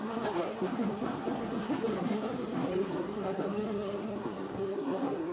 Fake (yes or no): yes